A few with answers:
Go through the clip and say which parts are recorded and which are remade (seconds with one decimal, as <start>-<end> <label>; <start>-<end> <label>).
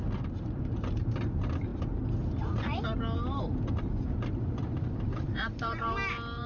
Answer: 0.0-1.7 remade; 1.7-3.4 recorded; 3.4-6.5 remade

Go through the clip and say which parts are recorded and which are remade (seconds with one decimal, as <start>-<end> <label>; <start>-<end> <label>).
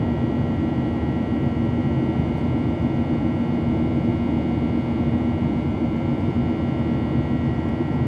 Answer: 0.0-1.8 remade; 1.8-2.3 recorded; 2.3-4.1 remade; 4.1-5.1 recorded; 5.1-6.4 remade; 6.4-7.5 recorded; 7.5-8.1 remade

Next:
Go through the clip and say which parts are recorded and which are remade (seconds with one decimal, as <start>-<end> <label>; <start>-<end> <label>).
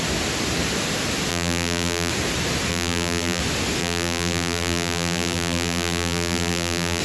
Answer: 0.0-1.3 recorded; 1.3-2.1 remade; 2.1-2.7 recorded; 2.7-3.4 remade; 3.4-3.8 recorded; 3.8-7.0 remade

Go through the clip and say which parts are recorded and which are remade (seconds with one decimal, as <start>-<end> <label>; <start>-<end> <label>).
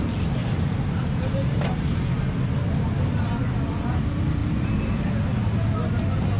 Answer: 0.0-0.4 recorded; 0.4-1.6 remade; 1.6-6.4 recorded